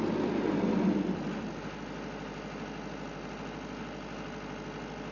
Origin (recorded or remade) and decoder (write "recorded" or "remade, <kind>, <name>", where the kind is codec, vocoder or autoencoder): recorded